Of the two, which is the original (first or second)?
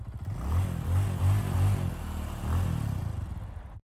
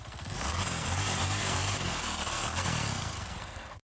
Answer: first